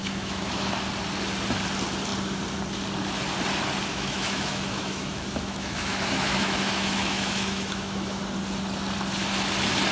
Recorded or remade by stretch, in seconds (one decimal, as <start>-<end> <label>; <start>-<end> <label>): 0.0-0.7 remade; 0.7-3.9 recorded; 3.9-8.2 remade; 8.2-9.9 recorded